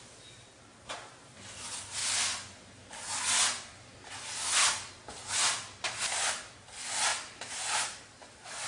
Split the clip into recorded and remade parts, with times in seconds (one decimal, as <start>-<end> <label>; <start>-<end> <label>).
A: 0.0-0.7 recorded; 0.7-1.3 remade; 1.3-2.0 recorded; 2.0-3.1 remade; 3.1-7.1 recorded; 7.1-8.7 remade